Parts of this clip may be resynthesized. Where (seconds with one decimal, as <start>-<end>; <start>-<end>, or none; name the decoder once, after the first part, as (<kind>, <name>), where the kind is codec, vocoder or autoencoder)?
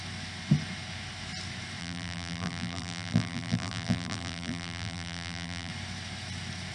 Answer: 1.8-5.7 (vocoder, BigVGAN v2)